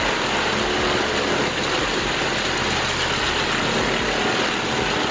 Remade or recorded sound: recorded